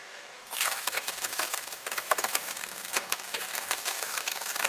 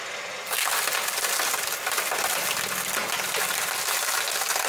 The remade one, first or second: first